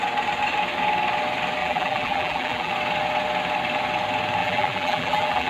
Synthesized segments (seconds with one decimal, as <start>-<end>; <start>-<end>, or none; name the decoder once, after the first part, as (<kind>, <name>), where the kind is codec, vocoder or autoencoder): 1.6-2.7 (vocoder, BigVGAN v2); 4.4-5.5